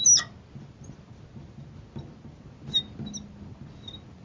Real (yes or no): yes